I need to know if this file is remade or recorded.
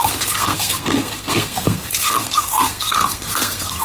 remade